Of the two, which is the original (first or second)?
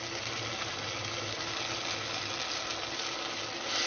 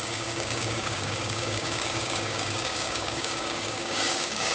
first